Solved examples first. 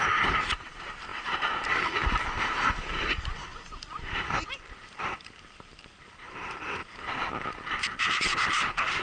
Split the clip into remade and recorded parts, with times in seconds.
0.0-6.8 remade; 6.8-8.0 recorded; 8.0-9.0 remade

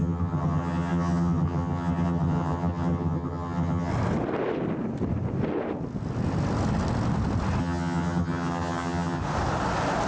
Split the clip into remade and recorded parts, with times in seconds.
0.0-3.9 remade; 3.9-7.6 recorded; 7.6-9.2 remade; 9.2-10.1 recorded

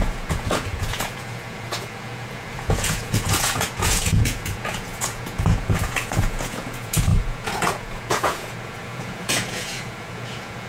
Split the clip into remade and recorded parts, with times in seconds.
0.0-10.7 remade

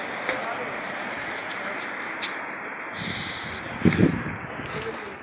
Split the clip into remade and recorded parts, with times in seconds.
0.0-5.2 recorded

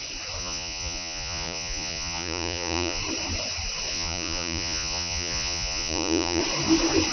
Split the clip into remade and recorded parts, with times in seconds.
0.0-0.4 recorded; 0.4-3.0 remade; 3.0-3.9 recorded; 3.9-6.4 remade; 6.4-7.1 recorded

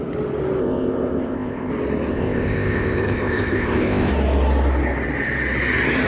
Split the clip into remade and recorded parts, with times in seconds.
0.0-0.6 recorded; 0.6-1.7 remade; 1.7-2.1 recorded; 2.1-4.1 remade; 4.1-6.1 recorded

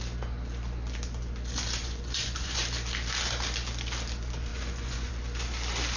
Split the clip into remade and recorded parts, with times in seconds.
0.0-1.8 recorded; 1.8-2.6 remade; 2.6-4.5 recorded; 4.5-5.1 remade; 5.1-6.0 recorded